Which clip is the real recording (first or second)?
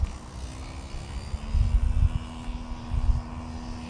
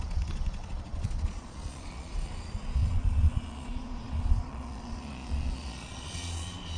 first